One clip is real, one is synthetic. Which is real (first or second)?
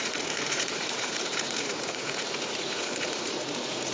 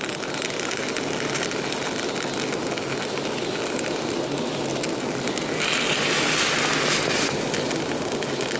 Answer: second